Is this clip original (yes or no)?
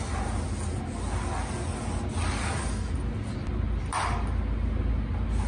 yes